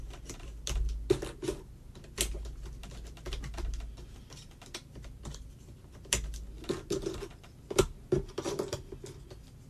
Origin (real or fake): real